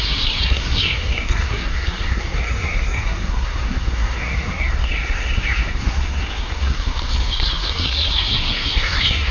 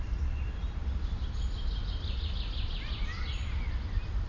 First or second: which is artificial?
first